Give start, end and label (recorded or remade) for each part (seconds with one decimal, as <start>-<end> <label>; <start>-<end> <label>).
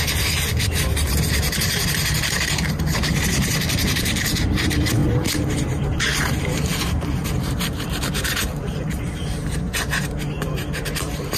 0.0-5.0 remade; 5.0-5.5 recorded; 5.5-11.4 remade